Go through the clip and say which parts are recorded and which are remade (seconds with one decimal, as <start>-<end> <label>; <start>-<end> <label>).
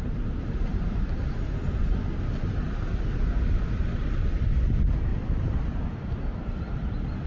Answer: 0.0-5.1 recorded; 5.1-7.3 remade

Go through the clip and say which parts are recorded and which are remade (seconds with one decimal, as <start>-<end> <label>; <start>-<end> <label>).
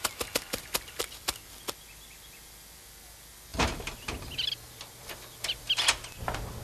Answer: 0.0-3.5 recorded; 3.5-5.7 remade; 5.7-6.6 recorded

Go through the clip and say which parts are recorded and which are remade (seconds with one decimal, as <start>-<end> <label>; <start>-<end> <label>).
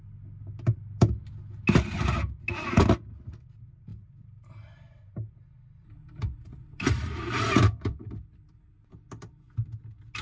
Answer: 0.0-3.9 recorded; 3.9-8.9 remade; 8.9-10.2 recorded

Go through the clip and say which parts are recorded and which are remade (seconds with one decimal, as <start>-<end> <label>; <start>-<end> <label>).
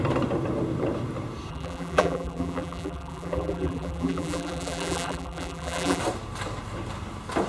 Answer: 0.0-1.5 recorded; 1.5-6.0 remade; 6.0-7.5 recorded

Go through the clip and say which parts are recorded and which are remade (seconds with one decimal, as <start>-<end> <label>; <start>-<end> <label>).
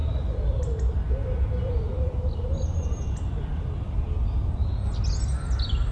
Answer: 0.0-0.6 remade; 0.6-1.2 recorded; 1.2-4.0 remade; 4.0-5.9 recorded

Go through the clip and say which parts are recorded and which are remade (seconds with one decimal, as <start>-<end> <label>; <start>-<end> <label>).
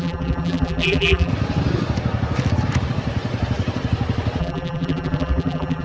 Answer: 0.0-1.3 remade; 1.3-4.4 recorded; 4.4-5.8 remade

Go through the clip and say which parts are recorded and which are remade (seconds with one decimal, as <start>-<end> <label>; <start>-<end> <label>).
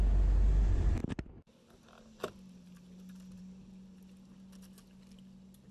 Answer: 0.0-5.7 recorded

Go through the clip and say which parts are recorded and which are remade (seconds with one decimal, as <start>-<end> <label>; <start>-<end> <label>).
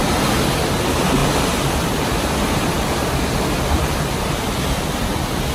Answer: 0.0-1.2 recorded; 1.2-4.2 remade; 4.2-5.5 recorded